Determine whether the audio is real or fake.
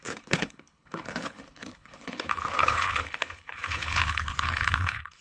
fake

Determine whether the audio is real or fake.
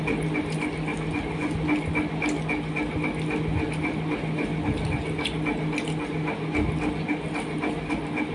real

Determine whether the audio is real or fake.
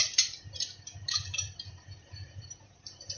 fake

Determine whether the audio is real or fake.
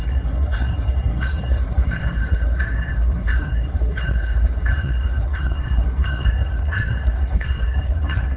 fake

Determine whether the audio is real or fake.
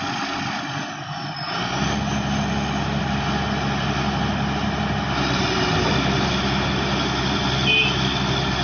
real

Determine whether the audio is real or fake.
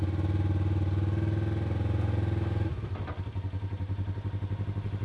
real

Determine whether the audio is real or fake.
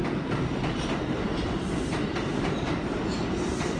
real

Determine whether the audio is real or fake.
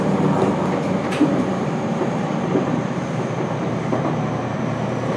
fake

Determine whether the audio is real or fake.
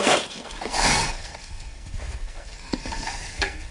fake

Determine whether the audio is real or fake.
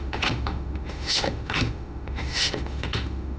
fake